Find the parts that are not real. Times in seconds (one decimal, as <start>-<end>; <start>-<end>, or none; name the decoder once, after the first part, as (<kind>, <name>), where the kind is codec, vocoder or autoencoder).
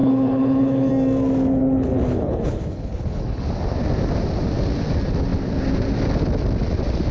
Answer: 0.0-0.9 (codec, HILCodec); 1.6-3.5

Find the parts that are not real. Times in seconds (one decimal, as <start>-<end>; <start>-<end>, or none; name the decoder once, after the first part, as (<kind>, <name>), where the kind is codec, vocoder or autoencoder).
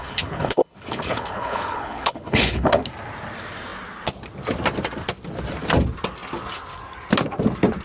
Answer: 0.0-2.8 (codec, HILCodec)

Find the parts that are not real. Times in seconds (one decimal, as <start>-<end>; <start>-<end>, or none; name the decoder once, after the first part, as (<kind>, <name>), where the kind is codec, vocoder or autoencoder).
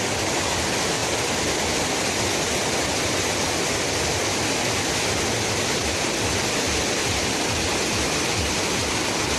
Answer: none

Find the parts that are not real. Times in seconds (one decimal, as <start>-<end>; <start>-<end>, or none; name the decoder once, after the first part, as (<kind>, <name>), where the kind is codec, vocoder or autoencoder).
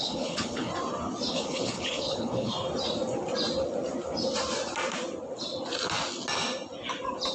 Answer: 0.0-0.7 (codec, HILCodec); 1.3-2.5